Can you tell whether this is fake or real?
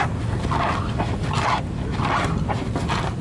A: real